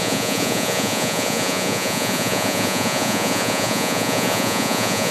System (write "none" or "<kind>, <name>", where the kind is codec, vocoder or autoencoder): vocoder, Vocos